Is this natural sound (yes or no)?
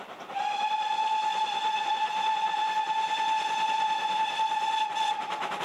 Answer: yes